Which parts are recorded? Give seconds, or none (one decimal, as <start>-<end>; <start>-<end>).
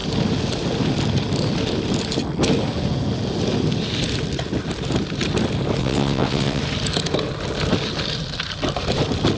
0.0-5.8; 6.6-9.4